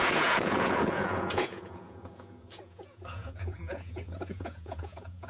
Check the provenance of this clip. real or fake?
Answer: fake